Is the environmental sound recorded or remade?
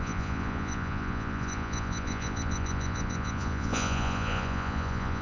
remade